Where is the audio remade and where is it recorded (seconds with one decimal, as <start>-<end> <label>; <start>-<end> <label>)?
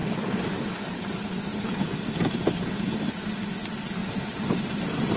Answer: 0.0-3.1 remade; 3.1-4.0 recorded; 4.0-5.2 remade